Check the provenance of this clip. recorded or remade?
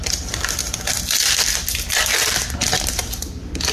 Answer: recorded